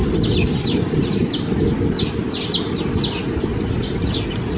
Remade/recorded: recorded